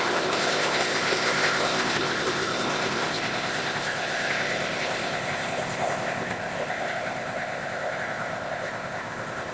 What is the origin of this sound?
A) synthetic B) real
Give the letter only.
A